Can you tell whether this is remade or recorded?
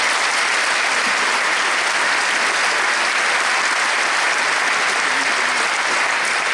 recorded